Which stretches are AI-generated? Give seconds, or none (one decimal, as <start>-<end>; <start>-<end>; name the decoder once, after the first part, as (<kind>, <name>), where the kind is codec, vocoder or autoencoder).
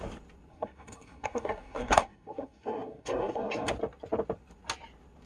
0.5-3.7 (codec, SNAC)